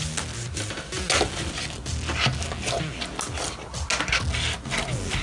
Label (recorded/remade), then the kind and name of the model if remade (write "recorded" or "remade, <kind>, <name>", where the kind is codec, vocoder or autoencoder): recorded